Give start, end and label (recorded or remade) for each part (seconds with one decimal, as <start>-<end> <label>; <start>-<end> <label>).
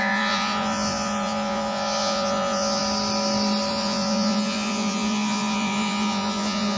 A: 0.0-2.8 remade; 2.8-3.7 recorded; 3.7-6.8 remade